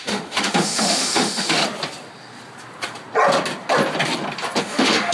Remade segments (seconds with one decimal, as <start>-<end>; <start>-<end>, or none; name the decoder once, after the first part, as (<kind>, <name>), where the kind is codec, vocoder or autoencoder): 0.0-1.6 (autoencoder, DAC-VAE); 4.6-5.1